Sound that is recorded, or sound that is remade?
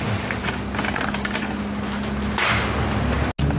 recorded